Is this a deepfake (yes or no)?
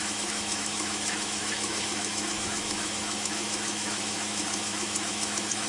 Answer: yes